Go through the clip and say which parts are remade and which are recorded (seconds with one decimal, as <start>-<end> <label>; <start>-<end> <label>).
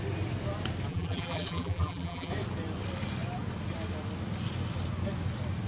0.0-0.9 recorded; 0.9-2.3 remade; 2.3-5.7 recorded